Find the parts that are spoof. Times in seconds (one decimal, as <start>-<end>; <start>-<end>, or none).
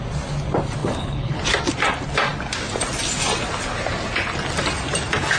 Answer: 0.8-1.4